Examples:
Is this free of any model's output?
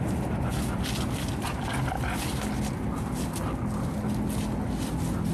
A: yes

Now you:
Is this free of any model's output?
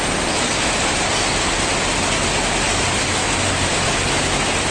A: yes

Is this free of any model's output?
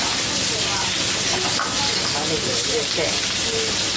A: yes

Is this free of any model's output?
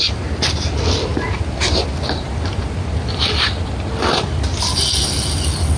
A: yes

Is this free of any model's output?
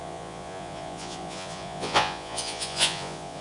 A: no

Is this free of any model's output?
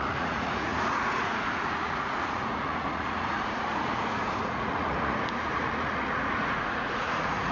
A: no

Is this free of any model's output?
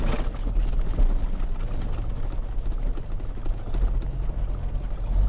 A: yes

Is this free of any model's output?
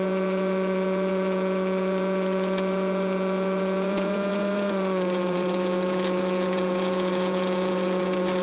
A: no